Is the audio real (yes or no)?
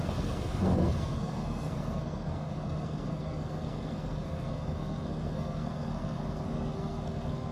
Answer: no